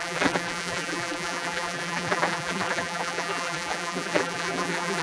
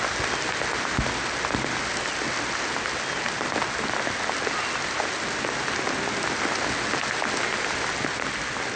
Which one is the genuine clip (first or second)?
second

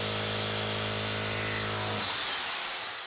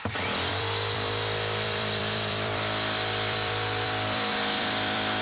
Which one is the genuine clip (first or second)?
first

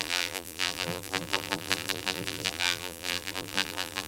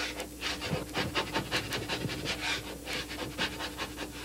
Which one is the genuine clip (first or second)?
second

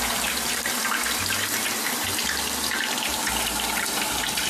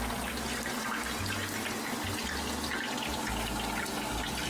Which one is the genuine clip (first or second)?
second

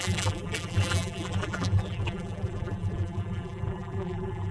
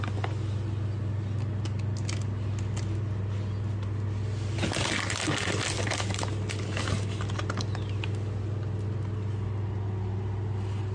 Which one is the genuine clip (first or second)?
second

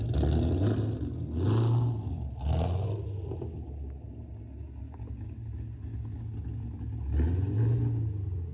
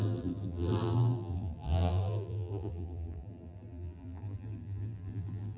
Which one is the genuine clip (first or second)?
first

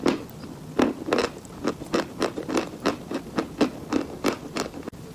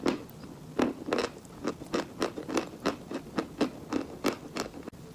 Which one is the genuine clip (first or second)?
second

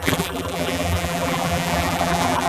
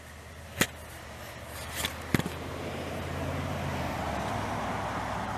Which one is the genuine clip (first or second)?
second